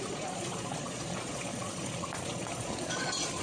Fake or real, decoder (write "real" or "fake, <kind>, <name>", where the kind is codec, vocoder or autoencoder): fake, vocoder, Vocos